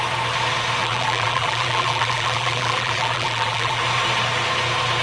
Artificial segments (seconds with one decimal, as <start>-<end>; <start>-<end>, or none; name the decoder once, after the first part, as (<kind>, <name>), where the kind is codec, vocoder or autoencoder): 0.8-3.8 (vocoder, BigVGAN v2)